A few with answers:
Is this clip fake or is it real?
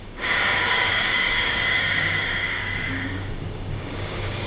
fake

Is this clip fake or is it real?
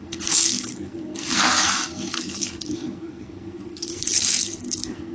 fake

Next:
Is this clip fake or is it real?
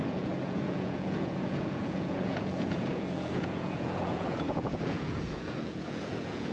fake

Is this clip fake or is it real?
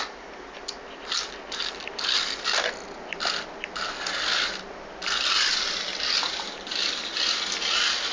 real